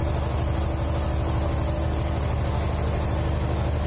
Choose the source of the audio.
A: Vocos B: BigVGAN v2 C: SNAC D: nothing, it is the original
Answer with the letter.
D